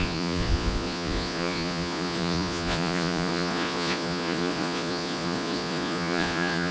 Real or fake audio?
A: fake